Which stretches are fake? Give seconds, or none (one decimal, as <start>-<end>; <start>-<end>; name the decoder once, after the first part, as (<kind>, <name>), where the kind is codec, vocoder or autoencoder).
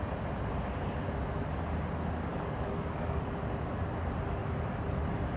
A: 2.3-3.2 (codec, DAC)